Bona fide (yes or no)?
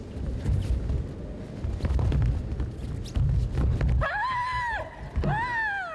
yes